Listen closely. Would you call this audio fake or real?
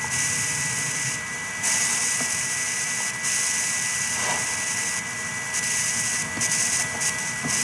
fake